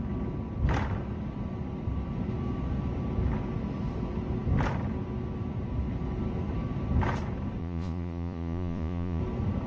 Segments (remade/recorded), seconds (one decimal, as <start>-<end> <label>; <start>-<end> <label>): 0.0-7.6 recorded; 7.6-9.2 remade; 9.2-9.7 recorded

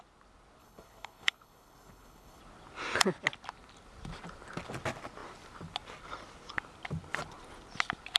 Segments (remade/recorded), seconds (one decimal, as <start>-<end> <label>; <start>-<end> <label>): 0.0-0.6 recorded; 0.6-2.4 remade; 2.4-8.2 recorded

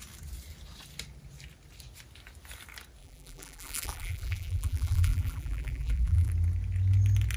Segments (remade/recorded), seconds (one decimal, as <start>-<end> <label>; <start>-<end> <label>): 0.0-3.0 recorded; 3.0-6.3 remade; 6.3-7.4 recorded

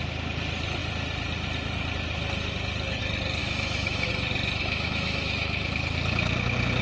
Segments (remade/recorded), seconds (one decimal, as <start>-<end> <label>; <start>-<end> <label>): 0.0-3.4 recorded; 3.4-4.1 remade; 4.1-4.6 recorded; 4.6-5.7 remade; 5.7-6.8 recorded